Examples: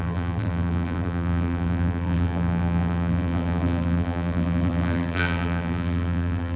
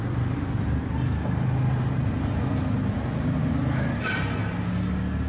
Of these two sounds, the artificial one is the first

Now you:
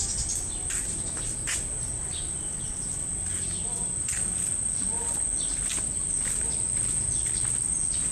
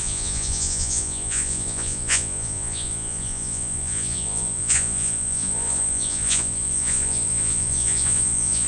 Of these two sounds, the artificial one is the second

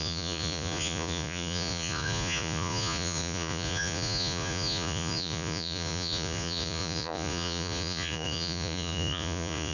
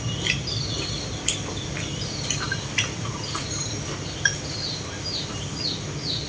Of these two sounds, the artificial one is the first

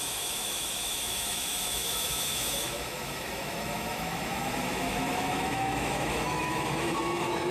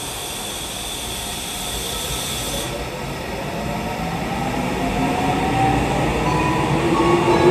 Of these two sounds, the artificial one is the first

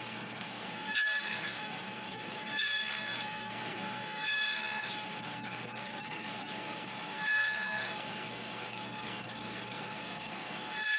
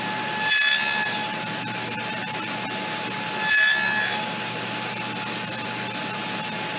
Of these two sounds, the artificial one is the first